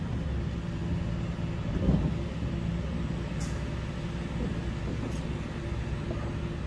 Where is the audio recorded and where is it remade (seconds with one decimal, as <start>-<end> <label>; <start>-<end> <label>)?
0.0-6.7 recorded